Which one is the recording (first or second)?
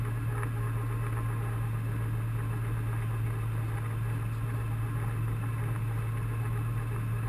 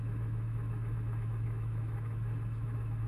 first